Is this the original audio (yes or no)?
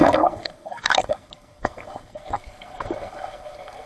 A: no